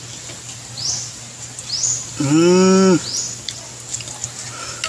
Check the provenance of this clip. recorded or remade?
recorded